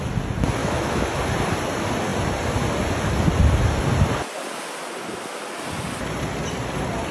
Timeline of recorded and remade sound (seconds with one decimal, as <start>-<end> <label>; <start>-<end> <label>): 0.0-0.6 recorded; 0.6-1.2 remade; 1.2-7.1 recorded